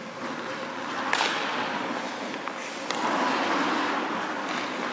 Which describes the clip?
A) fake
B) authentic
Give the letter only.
B